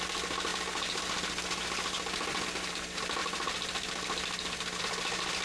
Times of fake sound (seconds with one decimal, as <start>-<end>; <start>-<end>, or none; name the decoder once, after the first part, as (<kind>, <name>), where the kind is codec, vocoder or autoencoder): none